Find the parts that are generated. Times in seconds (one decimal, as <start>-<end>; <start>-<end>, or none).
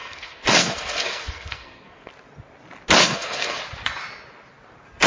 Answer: 0.0-2.1; 3.0-3.6